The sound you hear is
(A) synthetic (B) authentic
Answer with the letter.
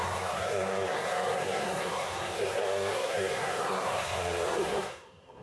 A